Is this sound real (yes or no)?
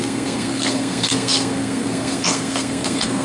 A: no